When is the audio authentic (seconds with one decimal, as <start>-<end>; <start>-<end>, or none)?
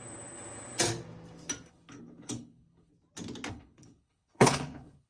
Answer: 0.0-1.7; 2.9-3.5